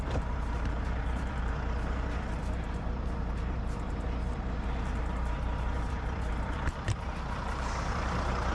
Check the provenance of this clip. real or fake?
fake